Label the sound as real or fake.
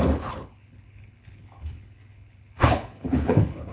fake